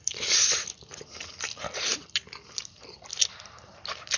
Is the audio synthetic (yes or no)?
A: no